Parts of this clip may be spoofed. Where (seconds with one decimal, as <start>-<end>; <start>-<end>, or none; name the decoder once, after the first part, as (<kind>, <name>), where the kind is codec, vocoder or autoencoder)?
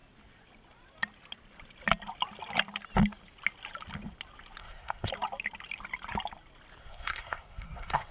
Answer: 4.6-5.1 (codec, SNAC); 6.8-8.1